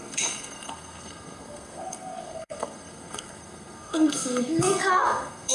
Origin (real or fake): fake